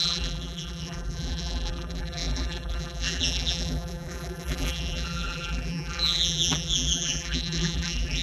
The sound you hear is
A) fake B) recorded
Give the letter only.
A